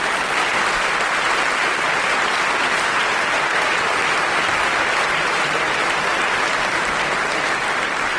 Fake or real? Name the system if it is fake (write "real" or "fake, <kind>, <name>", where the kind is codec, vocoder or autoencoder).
real